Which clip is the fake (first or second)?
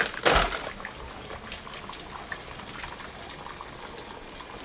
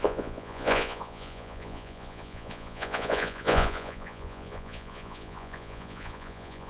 second